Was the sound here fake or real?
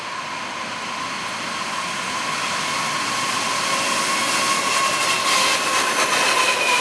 real